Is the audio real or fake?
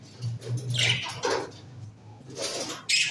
real